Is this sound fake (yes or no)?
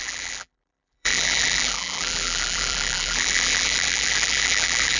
yes